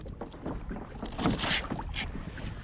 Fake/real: real